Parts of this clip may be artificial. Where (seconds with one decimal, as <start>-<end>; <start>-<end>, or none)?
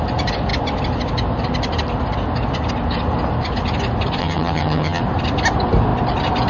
4.2-5.0